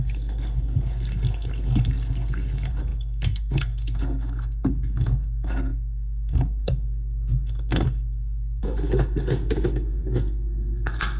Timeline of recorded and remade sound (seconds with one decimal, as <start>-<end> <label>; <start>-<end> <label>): 0.0-11.2 remade